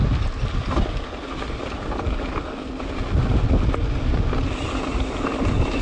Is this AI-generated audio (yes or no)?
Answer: no